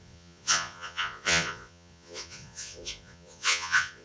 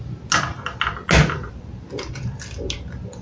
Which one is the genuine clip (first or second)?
second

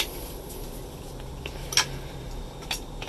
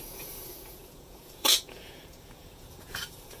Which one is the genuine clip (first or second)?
first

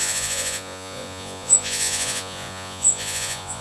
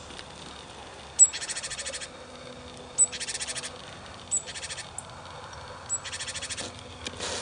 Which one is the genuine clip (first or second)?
second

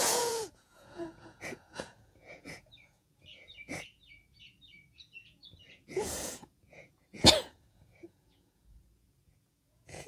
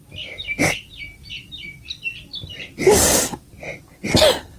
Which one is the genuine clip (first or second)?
second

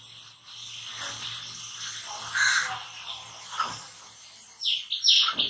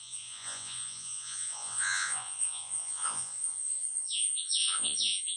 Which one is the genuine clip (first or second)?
first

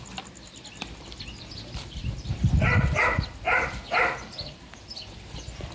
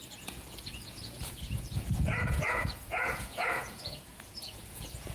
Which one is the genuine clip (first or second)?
first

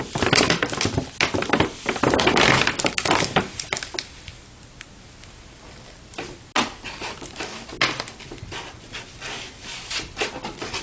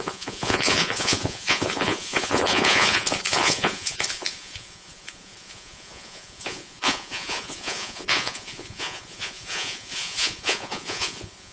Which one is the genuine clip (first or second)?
first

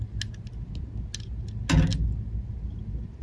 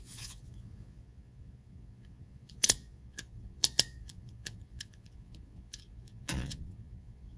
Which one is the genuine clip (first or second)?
first